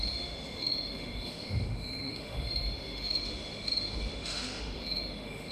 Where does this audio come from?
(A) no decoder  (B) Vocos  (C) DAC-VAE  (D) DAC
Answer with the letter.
C